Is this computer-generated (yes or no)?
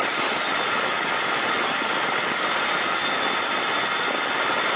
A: yes